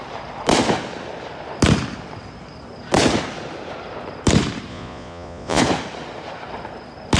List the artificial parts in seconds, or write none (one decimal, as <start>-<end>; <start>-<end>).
4.7-5.6